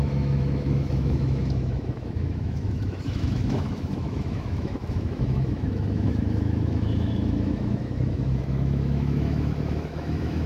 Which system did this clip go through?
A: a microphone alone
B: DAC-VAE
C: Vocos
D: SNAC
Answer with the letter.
B